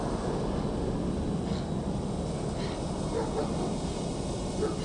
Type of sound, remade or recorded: recorded